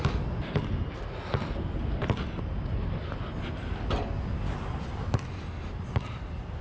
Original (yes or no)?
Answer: yes